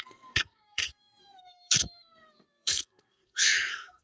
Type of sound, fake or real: fake